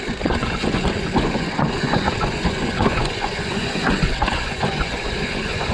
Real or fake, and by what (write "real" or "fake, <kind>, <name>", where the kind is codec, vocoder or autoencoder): fake, vocoder, Vocos